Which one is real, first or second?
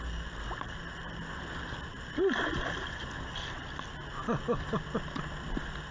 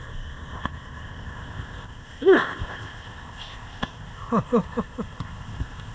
first